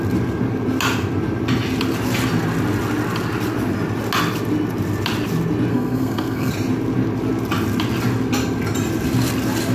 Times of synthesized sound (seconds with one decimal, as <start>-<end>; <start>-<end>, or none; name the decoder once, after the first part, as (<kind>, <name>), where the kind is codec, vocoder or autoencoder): 5.7-6.5 (codec, SNAC)